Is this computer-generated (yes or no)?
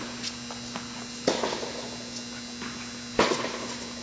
no